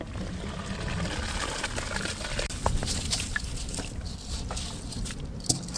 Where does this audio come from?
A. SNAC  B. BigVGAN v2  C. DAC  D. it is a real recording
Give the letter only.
D